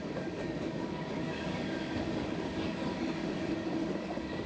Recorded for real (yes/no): no